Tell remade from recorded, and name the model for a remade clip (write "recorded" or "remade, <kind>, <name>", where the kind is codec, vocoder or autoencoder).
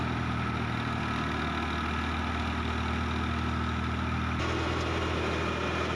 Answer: recorded